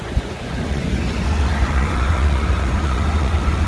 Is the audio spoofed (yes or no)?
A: yes